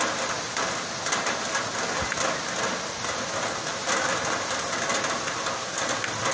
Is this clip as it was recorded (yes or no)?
yes